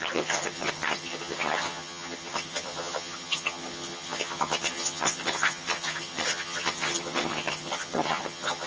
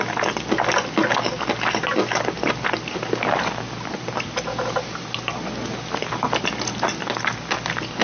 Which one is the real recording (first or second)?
second